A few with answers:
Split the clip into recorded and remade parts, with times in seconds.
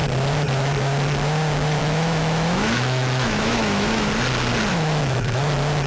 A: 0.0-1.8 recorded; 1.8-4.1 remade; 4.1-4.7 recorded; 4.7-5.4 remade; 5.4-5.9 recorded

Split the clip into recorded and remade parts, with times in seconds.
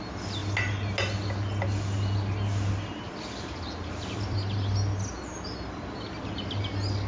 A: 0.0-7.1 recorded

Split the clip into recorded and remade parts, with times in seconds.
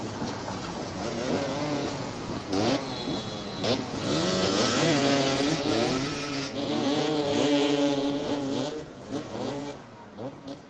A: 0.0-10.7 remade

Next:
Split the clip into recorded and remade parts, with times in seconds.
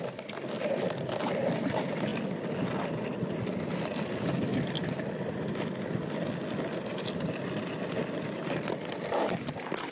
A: 0.0-9.9 recorded